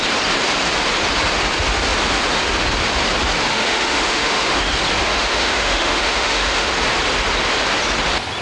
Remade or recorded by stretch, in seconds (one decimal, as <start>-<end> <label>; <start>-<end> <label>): 0.0-3.5 recorded; 3.5-4.6 remade; 4.6-5.0 recorded; 5.0-6.7 remade; 6.7-8.4 recorded